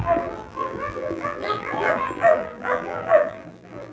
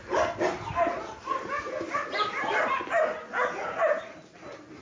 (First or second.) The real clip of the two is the second